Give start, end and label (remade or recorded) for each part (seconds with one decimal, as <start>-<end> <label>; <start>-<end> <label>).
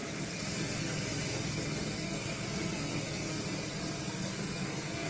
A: 0.0-3.4 remade; 3.4-4.1 recorded; 4.1-5.1 remade